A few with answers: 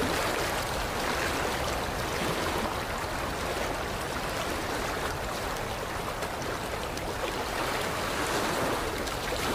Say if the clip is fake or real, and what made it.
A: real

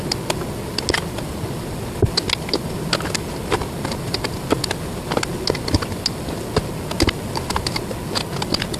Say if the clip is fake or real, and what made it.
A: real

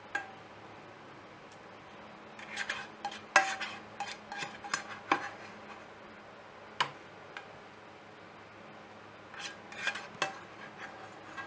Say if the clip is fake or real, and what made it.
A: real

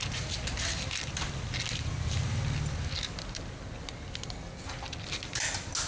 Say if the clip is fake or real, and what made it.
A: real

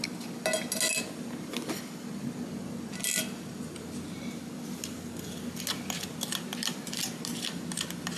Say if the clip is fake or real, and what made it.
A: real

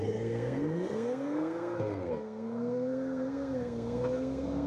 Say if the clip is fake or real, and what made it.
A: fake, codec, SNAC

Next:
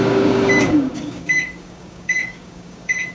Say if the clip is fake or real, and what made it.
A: fake, codec, DAC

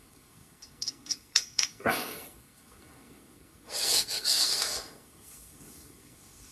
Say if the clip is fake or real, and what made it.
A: fake, codec, SNAC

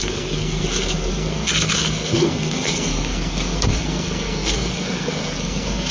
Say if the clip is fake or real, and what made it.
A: fake, codec, SNAC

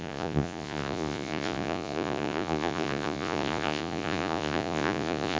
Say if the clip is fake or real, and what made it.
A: fake, vocoder, Vocos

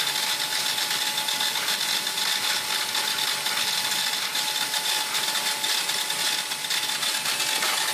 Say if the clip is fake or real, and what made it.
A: real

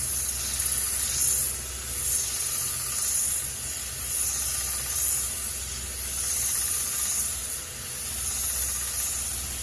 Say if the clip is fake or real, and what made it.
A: real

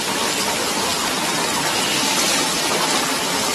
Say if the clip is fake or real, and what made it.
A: real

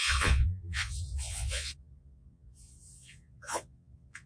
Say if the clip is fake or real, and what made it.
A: fake, vocoder, Vocos